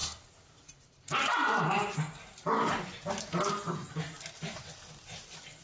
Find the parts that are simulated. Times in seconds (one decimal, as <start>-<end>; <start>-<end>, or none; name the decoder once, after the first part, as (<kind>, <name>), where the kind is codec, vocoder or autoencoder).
0.0-2.8 (vocoder, BigVGAN v2)